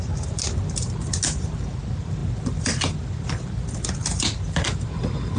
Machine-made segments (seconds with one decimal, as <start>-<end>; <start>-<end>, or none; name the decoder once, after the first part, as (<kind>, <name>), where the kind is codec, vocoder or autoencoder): none